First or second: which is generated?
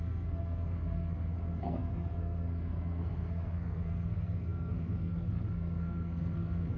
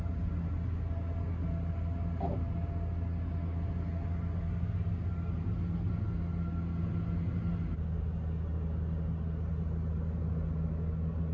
first